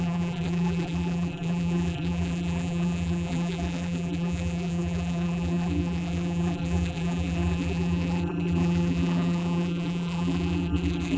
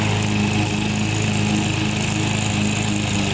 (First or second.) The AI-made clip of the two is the first